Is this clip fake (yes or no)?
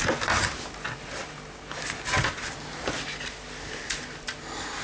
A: no